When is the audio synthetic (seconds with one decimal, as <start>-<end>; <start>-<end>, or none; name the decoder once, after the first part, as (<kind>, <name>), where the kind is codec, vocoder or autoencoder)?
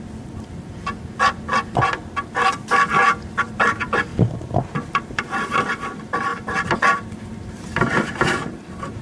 0.0-0.9 (vocoder, BigVGAN v2); 3.3-4.1; 4.9-9.0